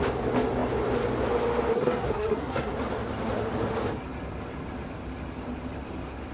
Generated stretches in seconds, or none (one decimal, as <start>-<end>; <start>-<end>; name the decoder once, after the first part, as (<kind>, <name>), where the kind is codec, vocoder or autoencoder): 1.7-2.7 (codec, SNAC)